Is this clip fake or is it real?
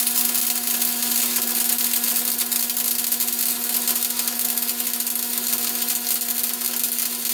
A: real